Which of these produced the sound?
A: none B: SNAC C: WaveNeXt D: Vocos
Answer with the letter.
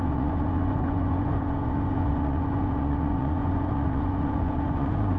D